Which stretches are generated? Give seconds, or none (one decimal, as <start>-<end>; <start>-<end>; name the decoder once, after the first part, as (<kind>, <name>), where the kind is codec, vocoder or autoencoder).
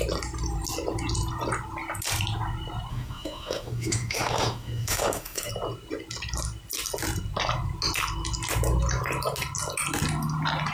2.9-5.5 (autoencoder, DAC-VAE)